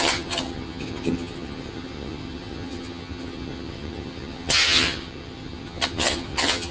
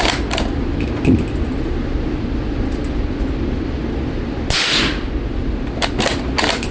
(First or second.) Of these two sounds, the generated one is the first